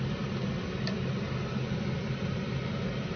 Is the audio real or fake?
real